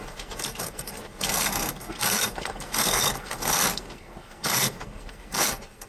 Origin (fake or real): fake